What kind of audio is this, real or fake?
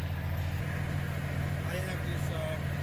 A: real